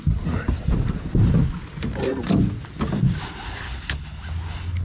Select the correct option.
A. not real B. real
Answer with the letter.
B